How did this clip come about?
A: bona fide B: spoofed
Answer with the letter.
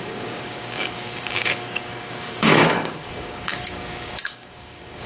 B